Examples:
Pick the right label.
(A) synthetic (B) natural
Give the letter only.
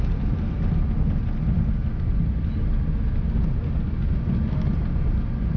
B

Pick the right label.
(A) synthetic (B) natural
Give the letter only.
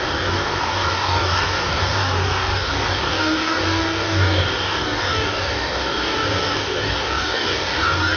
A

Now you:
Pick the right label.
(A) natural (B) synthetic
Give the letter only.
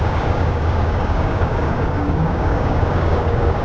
B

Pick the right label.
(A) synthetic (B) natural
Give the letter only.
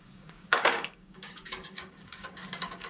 A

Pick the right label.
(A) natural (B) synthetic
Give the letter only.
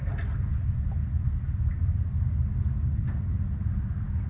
A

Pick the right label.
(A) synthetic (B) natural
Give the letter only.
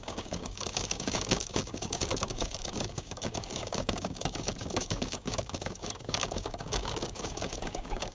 A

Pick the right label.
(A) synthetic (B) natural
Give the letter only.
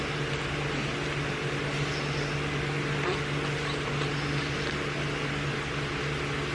B